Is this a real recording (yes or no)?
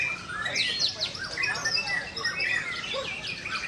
yes